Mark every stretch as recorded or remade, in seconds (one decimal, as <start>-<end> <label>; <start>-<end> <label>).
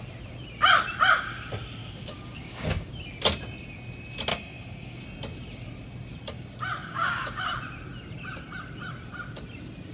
0.0-1.8 recorded; 1.8-2.9 remade; 2.9-4.3 recorded; 4.3-5.0 remade; 5.0-6.8 recorded; 6.8-7.4 remade; 7.4-9.9 recorded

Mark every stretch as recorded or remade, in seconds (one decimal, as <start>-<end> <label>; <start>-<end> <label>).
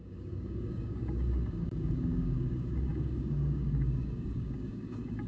0.0-5.3 remade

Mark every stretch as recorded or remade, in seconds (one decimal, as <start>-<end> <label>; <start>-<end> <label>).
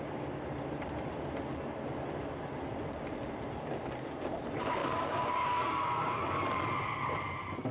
0.0-4.8 recorded; 4.8-6.2 remade; 6.2-7.7 recorded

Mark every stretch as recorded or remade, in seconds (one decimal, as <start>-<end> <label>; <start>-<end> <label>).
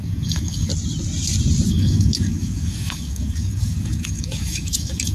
0.0-0.7 remade; 0.7-1.7 recorded; 1.7-5.1 remade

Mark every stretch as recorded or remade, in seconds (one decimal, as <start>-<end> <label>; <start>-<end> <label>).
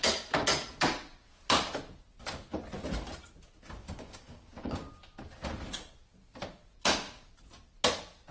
0.0-3.8 recorded; 3.8-4.9 remade; 4.9-6.8 recorded; 6.8-7.3 remade; 7.3-8.3 recorded